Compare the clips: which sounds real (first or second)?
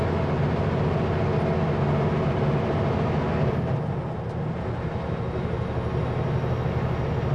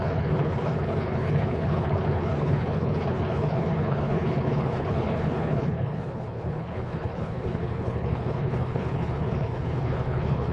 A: first